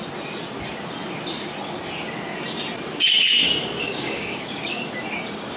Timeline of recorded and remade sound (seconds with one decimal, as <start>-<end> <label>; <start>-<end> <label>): 0.0-3.8 recorded; 3.8-4.8 remade; 4.8-5.6 recorded

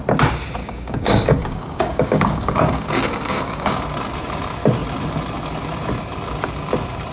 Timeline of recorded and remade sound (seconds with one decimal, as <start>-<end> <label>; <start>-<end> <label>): 0.0-0.6 recorded; 0.6-3.8 remade; 3.8-7.1 recorded

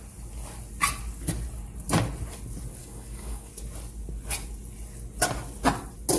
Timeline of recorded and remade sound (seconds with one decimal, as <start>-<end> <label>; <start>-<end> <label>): 0.0-2.8 recorded; 2.8-3.5 remade; 3.5-6.2 recorded

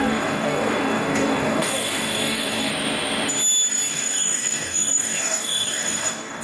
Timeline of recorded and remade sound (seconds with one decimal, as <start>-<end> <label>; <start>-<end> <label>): 0.0-2.7 remade; 2.7-3.9 recorded; 3.9-6.4 remade

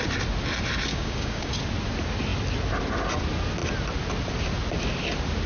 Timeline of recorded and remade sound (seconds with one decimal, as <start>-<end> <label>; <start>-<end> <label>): 0.0-0.9 recorded; 0.9-1.5 remade; 1.5-5.5 recorded

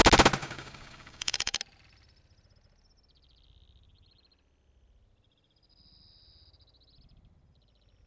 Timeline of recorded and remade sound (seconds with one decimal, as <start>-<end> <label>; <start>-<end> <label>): 0.0-0.4 recorded; 0.4-1.6 remade; 1.6-8.1 recorded

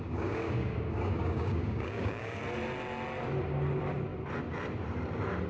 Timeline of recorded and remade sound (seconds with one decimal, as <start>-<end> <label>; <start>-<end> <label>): 0.0-2.4 remade; 2.4-5.5 recorded

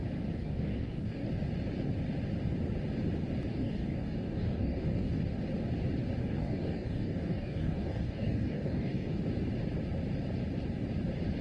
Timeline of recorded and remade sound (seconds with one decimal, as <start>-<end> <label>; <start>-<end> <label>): 0.0-0.4 recorded; 0.4-1.3 remade; 1.3-3.5 recorded; 3.5-5.2 remade; 5.2-6.2 recorded; 6.2-9.2 remade; 9.2-11.4 recorded